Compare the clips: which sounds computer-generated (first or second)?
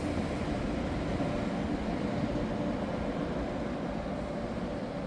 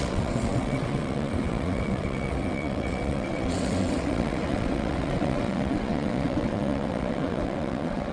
second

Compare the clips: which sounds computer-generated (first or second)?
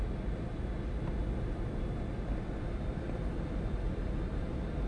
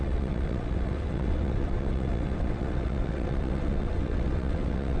second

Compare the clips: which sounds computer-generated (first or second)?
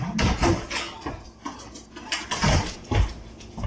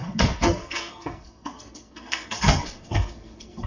second